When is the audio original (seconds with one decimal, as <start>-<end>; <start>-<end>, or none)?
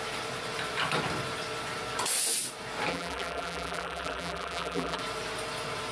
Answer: 0.0-2.9; 5.0-5.9